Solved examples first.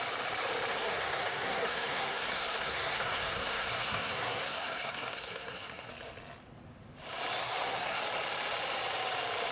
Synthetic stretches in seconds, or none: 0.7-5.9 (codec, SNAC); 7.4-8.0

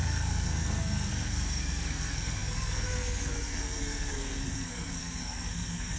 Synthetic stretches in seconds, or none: 0.0-6.0 (codec, SNAC)

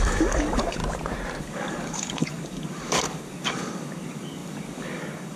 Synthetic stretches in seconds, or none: 0.0-0.8 (codec, DAC); 1.4-5.4

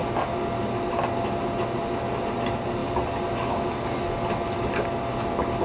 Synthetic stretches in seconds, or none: none

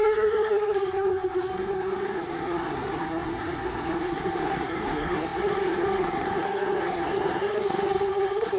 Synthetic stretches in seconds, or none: 0.0-8.6 (codec, SNAC)

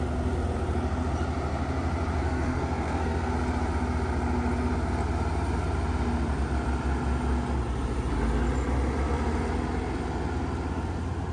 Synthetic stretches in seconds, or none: 2.2-3.3 (codec, SNAC)

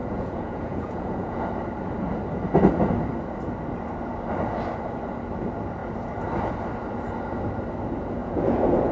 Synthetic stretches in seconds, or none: 0.0-1.5 (vocoder, Vocos); 8.2-8.9

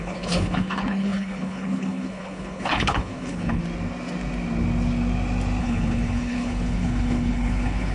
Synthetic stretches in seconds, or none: 0.0-3.6 (codec, HILCodec); 5.6-7.9